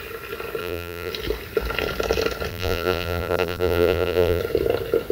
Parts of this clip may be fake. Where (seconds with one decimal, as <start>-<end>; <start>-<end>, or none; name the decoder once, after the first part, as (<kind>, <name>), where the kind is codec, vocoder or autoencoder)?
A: 0.6-1.1 (vocoder, BigVGAN v2); 2.5-4.4